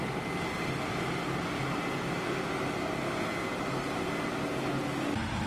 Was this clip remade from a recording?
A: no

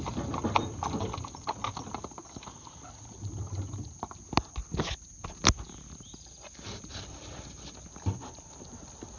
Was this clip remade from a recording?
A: no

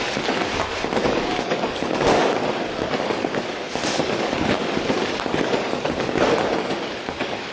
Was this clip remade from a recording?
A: yes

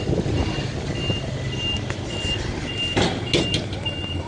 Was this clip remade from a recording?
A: no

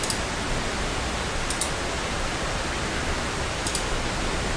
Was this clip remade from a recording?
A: no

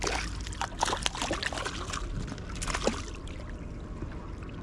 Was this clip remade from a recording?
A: no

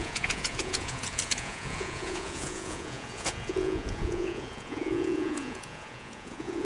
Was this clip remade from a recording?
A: yes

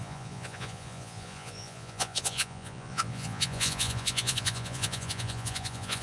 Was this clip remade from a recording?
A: yes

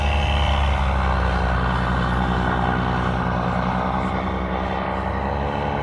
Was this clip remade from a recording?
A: no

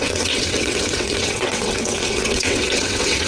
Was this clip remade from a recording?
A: yes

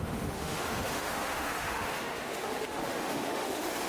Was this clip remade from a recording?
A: yes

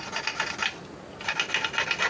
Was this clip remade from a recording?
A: no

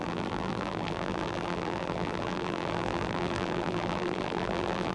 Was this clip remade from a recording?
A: yes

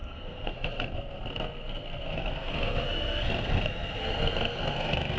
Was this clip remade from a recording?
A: yes